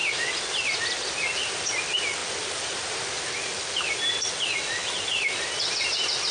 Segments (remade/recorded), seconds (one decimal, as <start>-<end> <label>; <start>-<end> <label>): 0.0-6.3 recorded